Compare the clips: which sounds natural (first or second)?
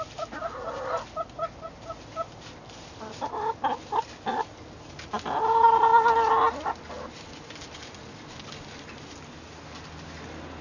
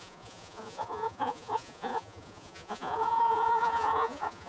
first